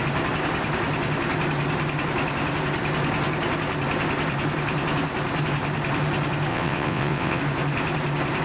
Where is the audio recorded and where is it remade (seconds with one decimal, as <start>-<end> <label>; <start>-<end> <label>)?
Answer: 0.0-6.5 recorded; 6.5-7.4 remade; 7.4-8.4 recorded